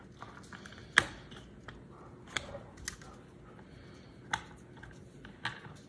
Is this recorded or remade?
recorded